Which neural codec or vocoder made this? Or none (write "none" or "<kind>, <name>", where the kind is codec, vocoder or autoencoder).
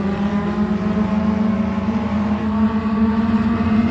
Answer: none